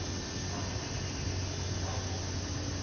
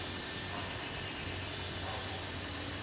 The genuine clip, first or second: first